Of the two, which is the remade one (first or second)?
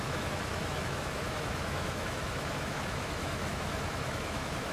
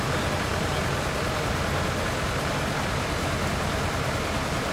first